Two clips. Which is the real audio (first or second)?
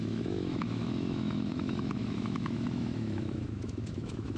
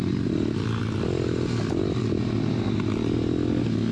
second